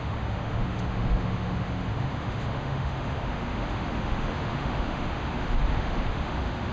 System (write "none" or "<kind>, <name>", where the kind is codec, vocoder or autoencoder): autoencoder, DAC-VAE